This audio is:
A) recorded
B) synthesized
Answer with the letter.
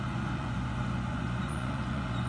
B